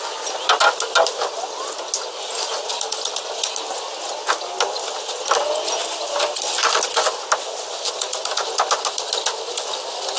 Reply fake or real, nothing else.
real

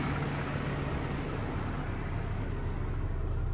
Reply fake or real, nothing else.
real